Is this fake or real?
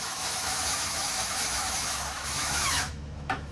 fake